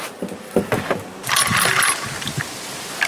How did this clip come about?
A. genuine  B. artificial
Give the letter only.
A